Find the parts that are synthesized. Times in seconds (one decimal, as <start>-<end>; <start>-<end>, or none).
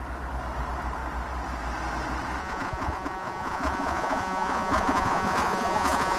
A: 2.4-6.2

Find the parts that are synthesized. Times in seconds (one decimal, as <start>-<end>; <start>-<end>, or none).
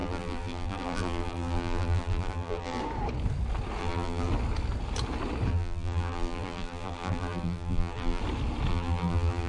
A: 0.0-2.8; 3.8-4.3; 5.5-8.2; 8.7-9.5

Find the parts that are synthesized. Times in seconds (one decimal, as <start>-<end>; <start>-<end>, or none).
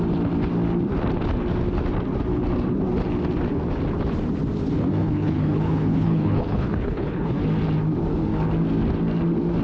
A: 5.0-7.4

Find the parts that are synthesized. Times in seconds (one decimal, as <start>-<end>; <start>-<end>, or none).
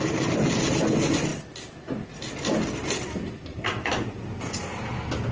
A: none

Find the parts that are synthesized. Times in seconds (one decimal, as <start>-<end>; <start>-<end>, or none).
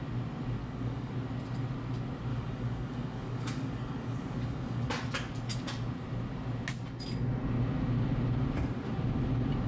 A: 0.6-1.1; 2.3-4.9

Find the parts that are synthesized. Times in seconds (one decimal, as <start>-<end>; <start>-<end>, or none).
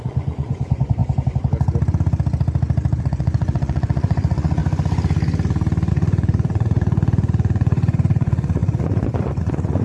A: 0.0-1.0; 3.0-4.6; 5.9-9.8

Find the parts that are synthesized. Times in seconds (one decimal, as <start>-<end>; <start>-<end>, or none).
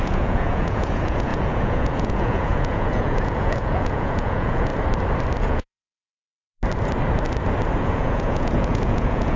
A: 0.0-4.7; 5.4-6.1; 7.8-9.4